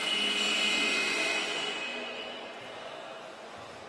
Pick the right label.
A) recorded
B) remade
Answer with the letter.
B